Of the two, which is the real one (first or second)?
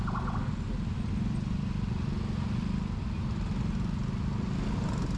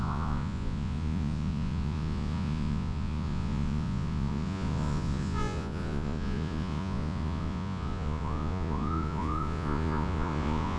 first